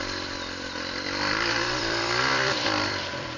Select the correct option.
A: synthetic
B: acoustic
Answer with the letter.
A